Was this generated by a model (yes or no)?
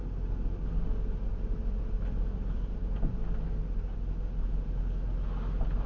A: no